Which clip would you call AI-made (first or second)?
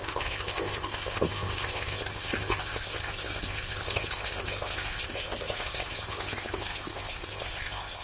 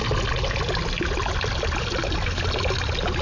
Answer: first